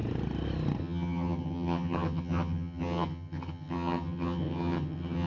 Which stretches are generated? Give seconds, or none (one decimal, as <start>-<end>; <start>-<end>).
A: 0.8-5.3